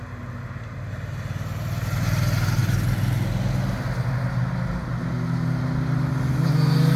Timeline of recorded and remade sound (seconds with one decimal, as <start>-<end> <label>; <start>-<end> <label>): 0.0-7.0 recorded